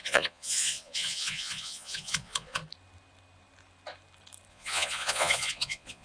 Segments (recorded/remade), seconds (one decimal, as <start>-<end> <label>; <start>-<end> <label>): 0.0-2.6 remade; 2.6-4.5 recorded; 4.5-6.0 remade